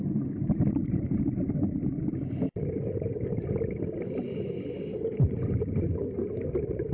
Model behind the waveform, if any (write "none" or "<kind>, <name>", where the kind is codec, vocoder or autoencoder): none